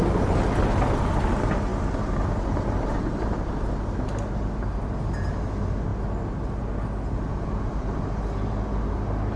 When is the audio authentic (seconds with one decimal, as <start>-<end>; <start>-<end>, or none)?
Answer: 0.0-7.3; 8.0-9.4